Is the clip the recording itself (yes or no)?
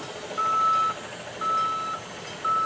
yes